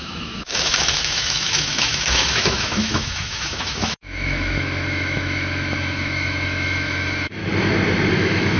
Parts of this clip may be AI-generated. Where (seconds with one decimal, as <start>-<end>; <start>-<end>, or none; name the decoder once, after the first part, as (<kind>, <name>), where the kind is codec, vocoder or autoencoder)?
0.0-7.4 (autoencoder, DAC-VAE); 8.1-8.6